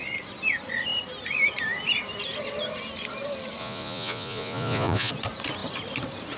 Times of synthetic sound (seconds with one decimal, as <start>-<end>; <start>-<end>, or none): 3.6-5.1